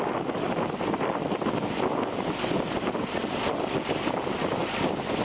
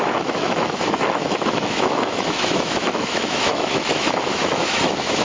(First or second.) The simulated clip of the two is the second